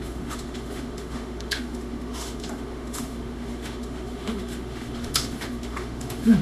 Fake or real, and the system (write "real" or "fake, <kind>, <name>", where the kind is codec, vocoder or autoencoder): fake, autoencoder, DAC-VAE